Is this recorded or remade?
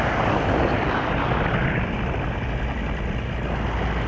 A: recorded